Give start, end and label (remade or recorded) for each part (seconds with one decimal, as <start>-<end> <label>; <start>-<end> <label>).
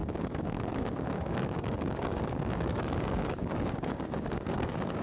0.0-5.0 remade